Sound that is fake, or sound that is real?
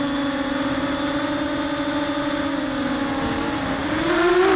real